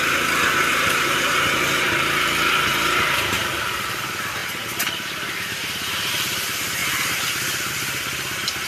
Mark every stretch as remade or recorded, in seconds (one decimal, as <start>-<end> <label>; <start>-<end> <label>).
0.0-0.7 recorded; 0.7-1.2 remade; 1.2-2.7 recorded; 2.7-3.7 remade; 3.7-4.4 recorded; 4.4-6.1 remade; 6.1-8.7 recorded